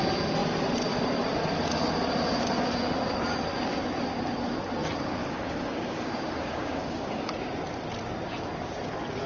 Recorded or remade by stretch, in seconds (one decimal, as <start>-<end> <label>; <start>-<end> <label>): 0.0-5.2 recorded; 5.2-7.3 remade; 7.3-9.3 recorded